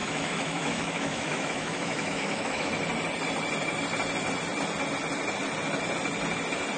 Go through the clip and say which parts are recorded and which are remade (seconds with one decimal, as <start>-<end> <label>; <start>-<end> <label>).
0.0-2.7 remade; 2.7-6.8 recorded